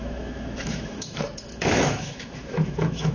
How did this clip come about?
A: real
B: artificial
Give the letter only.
B